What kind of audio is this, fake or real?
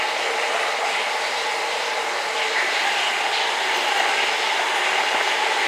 real